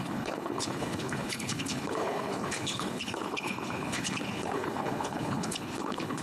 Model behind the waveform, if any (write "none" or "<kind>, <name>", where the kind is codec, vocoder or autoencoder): codec, HILCodec